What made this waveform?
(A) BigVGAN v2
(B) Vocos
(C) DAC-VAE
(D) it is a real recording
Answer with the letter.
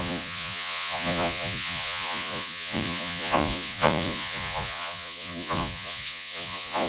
B